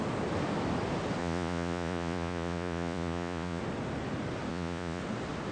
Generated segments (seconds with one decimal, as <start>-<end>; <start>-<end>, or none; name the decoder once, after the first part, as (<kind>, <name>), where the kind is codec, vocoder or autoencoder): 1.2-3.6 (vocoder, Vocos); 4.5-5.0